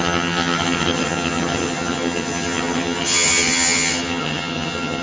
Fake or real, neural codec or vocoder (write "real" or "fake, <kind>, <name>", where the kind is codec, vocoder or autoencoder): fake, vocoder, HiFi-GAN